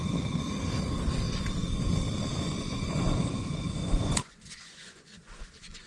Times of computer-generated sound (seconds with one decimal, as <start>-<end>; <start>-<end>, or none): 2.4-5.9

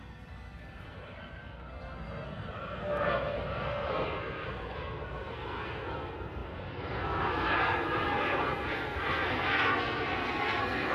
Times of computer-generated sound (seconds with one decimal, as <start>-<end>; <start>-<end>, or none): 0.0-10.9

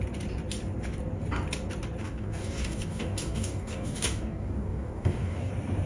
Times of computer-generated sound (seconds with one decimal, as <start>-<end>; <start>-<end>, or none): 2.0-5.5

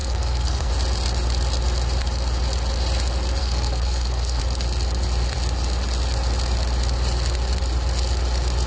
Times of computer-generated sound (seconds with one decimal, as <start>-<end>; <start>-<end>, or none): 0.0-0.7; 3.4-4.4